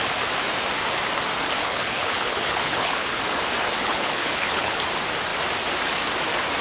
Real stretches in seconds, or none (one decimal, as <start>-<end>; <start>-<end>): 0.0-1.6; 3.2-3.8; 4.8-6.6